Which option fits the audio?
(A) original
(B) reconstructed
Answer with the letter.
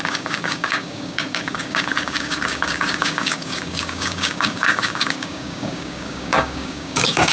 B